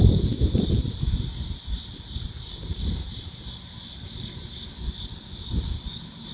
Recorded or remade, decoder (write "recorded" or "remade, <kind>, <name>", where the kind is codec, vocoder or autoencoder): remade, vocoder, BigVGAN v2